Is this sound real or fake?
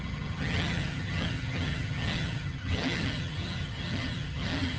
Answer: fake